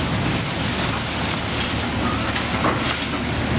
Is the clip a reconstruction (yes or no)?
no